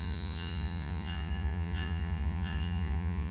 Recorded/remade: remade